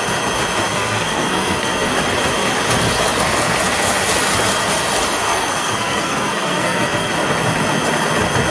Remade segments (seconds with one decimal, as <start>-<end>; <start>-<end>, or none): 0.7-1.9; 5.3-7.1